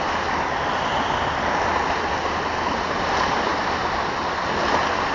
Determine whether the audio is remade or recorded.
recorded